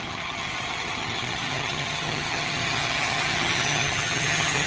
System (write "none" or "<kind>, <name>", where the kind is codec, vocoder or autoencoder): vocoder, HiFi-GAN